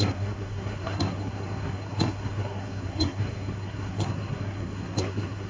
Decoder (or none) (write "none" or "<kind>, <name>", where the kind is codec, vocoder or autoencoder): codec, SNAC